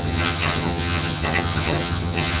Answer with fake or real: fake